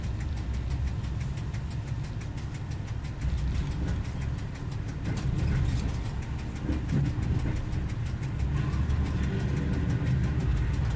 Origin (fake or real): real